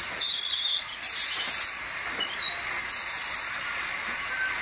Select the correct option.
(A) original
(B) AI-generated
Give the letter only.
A